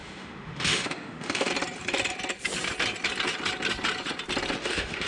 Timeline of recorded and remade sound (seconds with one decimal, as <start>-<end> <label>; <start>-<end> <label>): 0.0-1.5 remade; 1.5-4.6 recorded; 4.6-5.1 remade